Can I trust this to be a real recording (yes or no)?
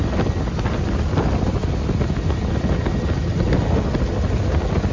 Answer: yes